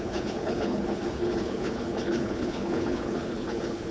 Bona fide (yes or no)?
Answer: no